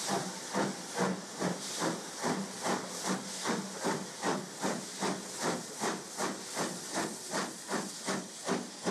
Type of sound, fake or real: real